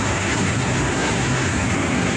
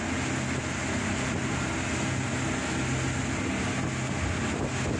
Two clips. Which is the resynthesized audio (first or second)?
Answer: first